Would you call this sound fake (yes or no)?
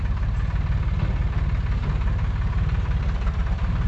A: no